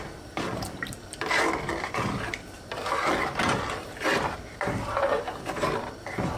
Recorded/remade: remade